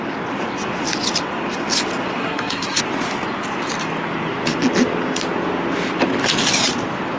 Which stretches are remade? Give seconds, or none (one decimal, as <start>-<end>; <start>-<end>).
2.2-2.8